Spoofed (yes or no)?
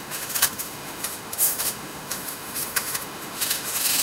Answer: yes